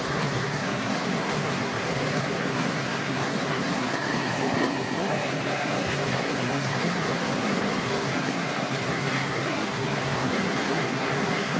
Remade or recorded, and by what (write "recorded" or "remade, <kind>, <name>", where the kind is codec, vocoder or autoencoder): remade, codec, SNAC